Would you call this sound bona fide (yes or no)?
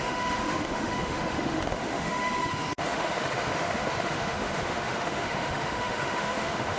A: no